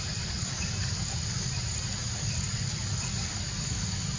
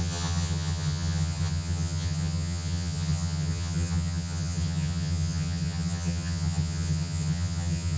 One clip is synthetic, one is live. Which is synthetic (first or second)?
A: second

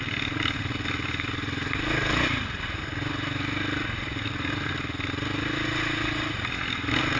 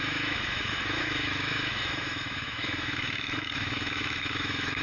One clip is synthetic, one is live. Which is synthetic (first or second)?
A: second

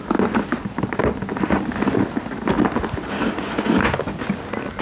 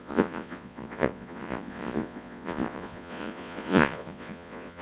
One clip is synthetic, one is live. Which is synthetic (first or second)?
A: second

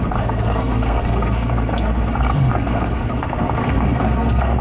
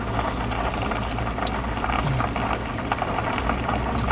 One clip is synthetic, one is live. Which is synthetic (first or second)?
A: first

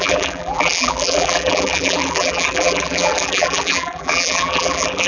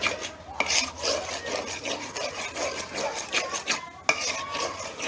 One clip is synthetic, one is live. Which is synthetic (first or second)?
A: first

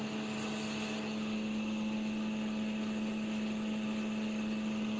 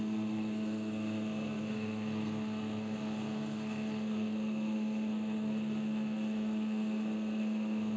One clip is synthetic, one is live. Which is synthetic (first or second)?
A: second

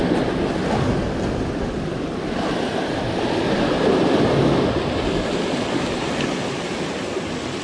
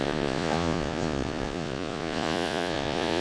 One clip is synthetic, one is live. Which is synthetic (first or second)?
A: second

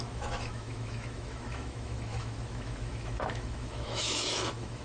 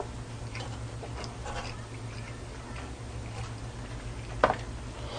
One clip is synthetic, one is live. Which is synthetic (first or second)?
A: first